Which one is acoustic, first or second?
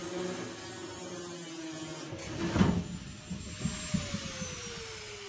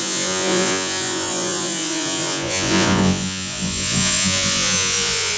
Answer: first